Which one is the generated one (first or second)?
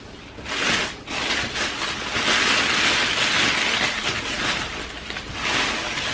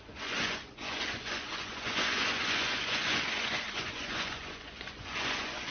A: second